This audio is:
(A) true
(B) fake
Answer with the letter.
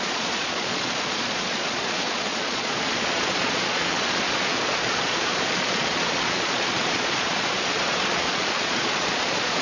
B